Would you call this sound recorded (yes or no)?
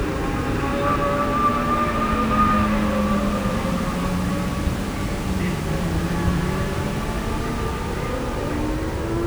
yes